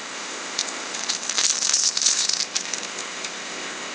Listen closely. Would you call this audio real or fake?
fake